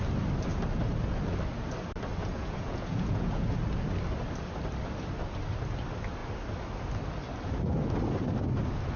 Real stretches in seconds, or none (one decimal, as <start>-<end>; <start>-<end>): 0.0-2.2; 3.5-9.0